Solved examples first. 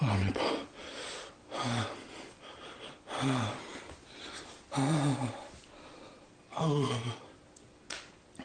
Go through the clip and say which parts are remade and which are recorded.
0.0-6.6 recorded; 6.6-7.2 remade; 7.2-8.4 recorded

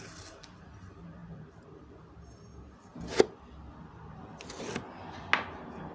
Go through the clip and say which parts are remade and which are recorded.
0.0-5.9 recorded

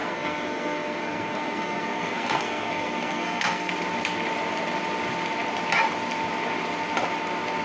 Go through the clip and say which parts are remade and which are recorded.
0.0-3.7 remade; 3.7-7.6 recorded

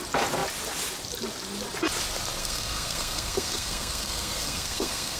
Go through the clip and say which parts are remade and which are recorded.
0.0-2.4 recorded; 2.4-5.2 remade